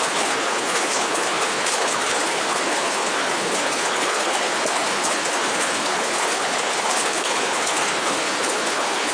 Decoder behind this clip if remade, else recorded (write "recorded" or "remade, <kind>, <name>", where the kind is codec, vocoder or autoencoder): remade, codec, HILCodec